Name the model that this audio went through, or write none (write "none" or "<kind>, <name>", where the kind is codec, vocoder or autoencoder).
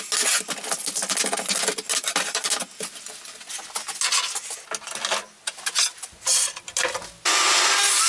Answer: none